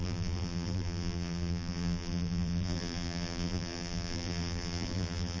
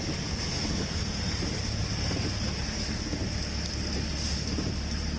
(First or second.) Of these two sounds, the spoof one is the first